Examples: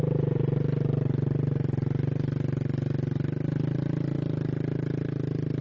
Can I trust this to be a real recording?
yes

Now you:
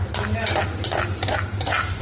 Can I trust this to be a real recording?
yes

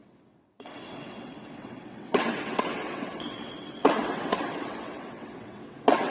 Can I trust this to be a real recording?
no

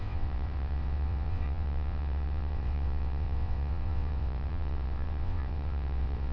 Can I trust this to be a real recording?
no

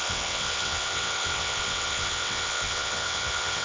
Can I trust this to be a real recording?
no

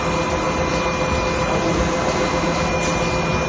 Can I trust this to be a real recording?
yes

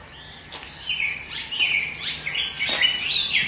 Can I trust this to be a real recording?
yes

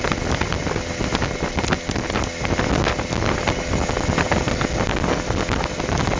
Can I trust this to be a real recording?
yes